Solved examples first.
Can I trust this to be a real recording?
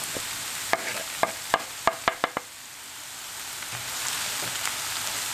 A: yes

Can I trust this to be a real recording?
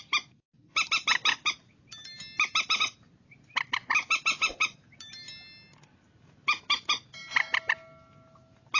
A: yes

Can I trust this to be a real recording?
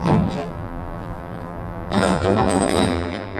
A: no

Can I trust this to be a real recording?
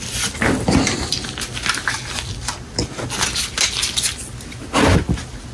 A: yes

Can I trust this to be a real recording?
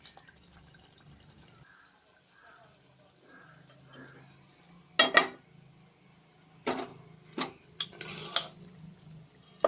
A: yes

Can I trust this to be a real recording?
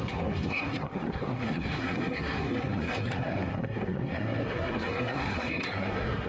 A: no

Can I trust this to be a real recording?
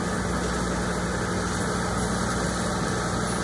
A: yes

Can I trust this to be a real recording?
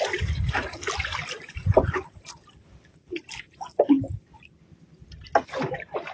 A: yes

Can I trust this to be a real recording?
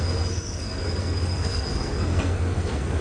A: no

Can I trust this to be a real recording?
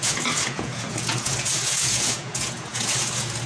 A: no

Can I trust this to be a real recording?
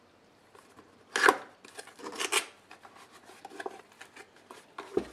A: yes